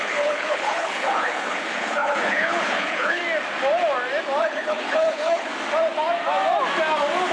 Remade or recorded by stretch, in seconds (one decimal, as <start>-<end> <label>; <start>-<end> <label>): 0.0-3.2 remade; 3.2-4.4 recorded; 4.4-5.5 remade; 5.5-7.3 recorded